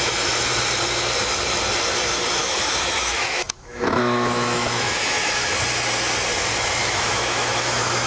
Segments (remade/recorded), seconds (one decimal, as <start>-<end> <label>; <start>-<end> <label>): 0.0-2.4 recorded; 2.4-5.5 remade; 5.5-6.8 recorded; 6.8-8.1 remade